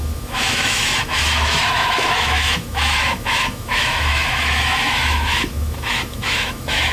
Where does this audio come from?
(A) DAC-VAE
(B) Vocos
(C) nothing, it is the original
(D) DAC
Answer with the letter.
A